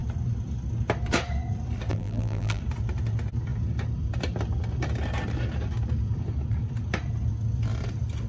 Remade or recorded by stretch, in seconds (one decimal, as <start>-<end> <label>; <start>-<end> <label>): 0.0-1.9 recorded; 1.9-2.6 remade; 2.6-8.3 recorded